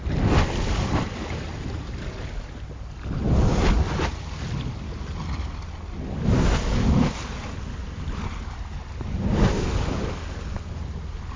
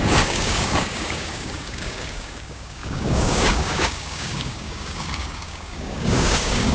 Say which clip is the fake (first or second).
second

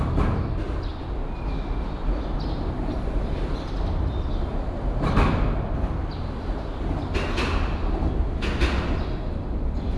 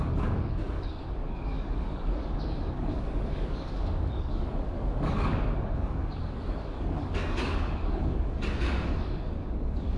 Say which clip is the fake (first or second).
second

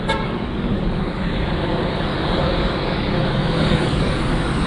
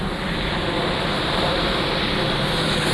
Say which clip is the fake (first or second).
first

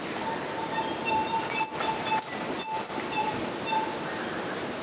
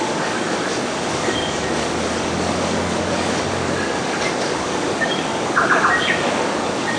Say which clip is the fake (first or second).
second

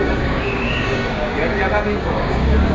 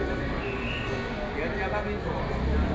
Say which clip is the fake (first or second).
first